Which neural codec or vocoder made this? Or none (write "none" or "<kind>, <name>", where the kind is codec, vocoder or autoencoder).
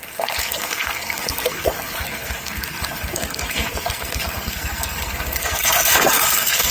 codec, SNAC